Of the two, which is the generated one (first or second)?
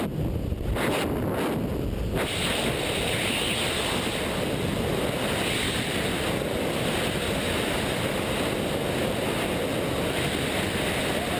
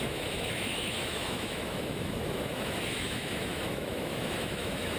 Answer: second